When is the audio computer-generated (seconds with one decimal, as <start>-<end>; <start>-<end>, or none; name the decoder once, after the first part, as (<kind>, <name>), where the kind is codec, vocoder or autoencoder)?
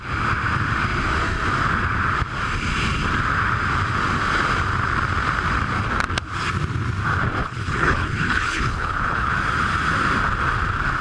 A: 7.4-9.3 (codec, HILCodec)